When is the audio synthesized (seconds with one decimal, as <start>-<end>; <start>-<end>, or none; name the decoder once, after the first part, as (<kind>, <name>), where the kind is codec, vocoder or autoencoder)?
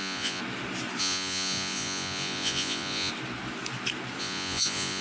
0.0-0.4 (vocoder, Vocos); 1.0-3.1; 4.2-5.0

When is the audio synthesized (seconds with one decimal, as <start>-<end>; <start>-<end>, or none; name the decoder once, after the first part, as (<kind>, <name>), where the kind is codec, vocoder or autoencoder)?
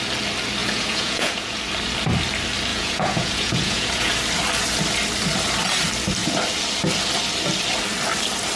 0.6-1.6 (vocoder, Vocos); 2.7-4.1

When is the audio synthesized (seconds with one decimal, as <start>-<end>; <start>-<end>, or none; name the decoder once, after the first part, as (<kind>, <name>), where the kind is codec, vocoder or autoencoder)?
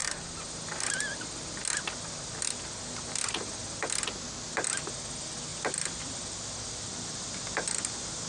none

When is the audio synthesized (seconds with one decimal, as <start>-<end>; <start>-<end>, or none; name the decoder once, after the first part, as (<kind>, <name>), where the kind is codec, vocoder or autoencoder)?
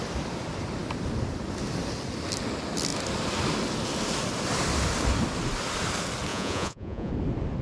6.3-7.1 (vocoder, Vocos)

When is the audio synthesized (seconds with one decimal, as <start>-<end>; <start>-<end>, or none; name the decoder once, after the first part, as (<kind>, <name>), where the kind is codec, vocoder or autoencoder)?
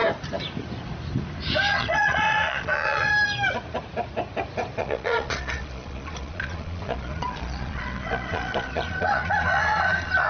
1.7-3.1 (vocoder, Vocos); 4.8-10.3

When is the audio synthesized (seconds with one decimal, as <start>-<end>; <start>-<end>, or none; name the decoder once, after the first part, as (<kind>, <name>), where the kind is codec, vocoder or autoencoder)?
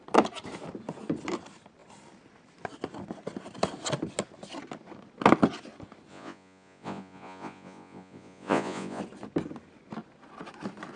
6.1-9.0 (vocoder, Vocos)